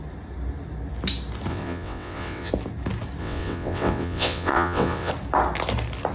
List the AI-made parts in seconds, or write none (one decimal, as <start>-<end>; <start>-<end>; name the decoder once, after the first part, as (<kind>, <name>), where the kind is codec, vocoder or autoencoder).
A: 1.5-2.5 (vocoder, WaveNeXt); 3.2-5.1